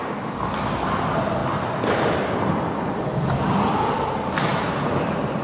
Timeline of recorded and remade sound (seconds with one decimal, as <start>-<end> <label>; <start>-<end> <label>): 0.0-5.4 recorded